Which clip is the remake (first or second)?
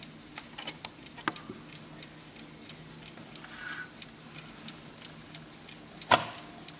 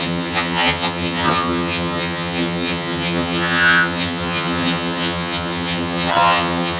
second